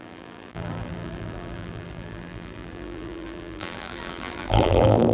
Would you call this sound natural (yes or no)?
no